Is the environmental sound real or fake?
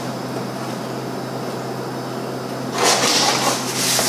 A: real